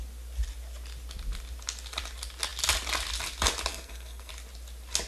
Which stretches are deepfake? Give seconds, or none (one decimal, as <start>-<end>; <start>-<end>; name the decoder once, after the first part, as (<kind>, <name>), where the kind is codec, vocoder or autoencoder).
3.7-4.3 (codec, SNAC)